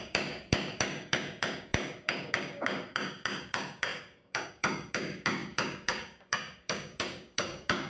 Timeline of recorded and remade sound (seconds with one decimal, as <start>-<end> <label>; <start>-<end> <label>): 0.0-7.9 remade